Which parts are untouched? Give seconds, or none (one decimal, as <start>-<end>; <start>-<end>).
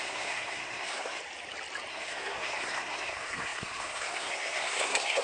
1.2-1.9